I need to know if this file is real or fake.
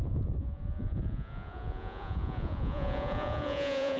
fake